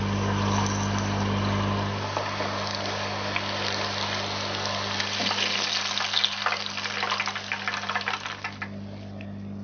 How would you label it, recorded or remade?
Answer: recorded